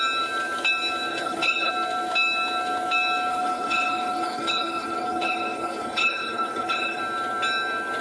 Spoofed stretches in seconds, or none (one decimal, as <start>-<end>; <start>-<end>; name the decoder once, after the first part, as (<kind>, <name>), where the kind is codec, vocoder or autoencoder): 1.1-1.7 (codec, HILCodec); 3.3-7.0